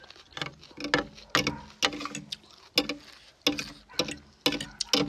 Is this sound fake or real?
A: real